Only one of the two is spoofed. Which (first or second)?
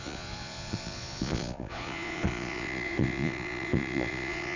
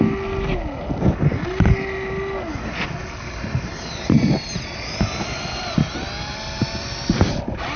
first